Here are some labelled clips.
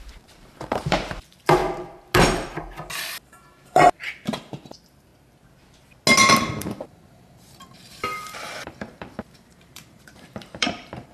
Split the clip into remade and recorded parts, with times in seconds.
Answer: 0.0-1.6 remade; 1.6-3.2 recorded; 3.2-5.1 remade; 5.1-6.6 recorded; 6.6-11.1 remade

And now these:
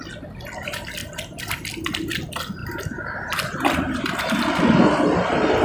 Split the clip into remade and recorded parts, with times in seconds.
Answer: 0.0-2.6 recorded; 2.6-4.0 remade; 4.0-5.6 recorded

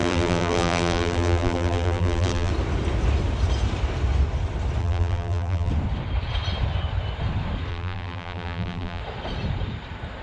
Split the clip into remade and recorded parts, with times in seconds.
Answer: 0.0-2.5 remade; 2.5-4.8 recorded; 4.8-5.7 remade; 5.7-7.7 recorded; 7.7-9.0 remade; 9.0-10.2 recorded

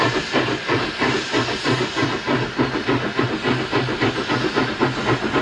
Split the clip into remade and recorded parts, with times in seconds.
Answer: 0.0-5.4 recorded

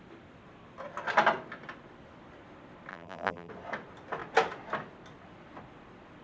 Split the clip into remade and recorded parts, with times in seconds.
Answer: 0.0-2.9 recorded; 2.9-3.5 remade; 3.5-6.2 recorded

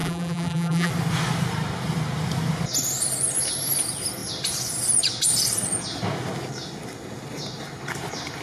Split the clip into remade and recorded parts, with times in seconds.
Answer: 0.0-0.9 remade; 0.9-8.4 recorded